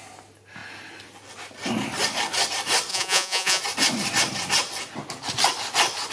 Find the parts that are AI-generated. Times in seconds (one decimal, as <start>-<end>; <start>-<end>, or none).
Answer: 2.9-3.6